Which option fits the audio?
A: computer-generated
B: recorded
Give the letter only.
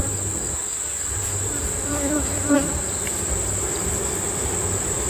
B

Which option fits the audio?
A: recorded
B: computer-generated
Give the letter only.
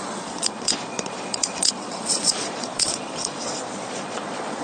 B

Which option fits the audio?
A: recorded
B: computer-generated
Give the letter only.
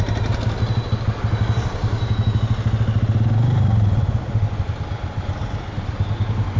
A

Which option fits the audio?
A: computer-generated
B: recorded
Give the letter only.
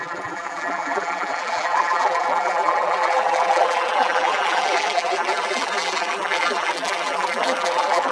A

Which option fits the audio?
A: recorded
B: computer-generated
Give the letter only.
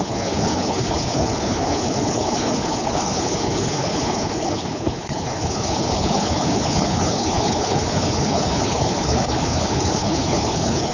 B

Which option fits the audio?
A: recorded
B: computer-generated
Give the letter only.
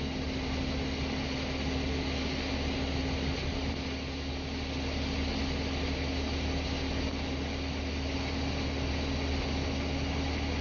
A